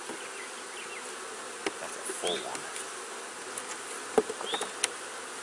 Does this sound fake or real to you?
real